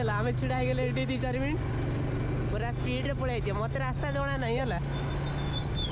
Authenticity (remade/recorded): recorded